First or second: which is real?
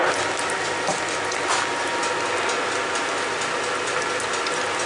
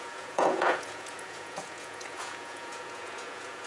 first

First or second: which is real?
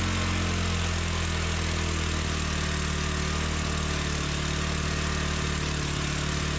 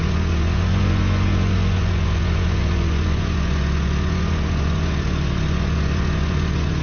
first